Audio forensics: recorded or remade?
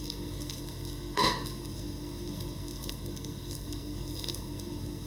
remade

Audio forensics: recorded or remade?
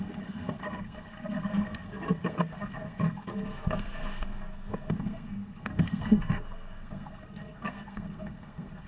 remade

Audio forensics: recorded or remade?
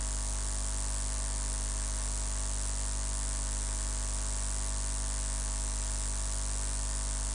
recorded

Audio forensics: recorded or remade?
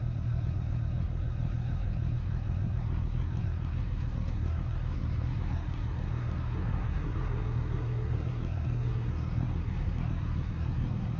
remade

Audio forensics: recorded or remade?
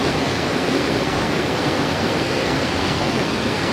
remade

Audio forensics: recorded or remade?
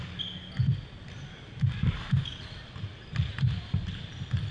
recorded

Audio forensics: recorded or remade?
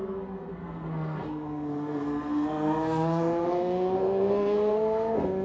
remade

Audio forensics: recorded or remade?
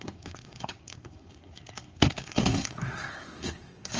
remade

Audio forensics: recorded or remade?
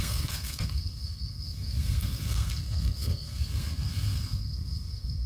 remade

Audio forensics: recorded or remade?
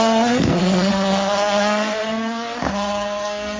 remade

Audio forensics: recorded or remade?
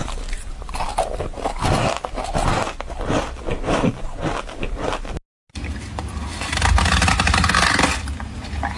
recorded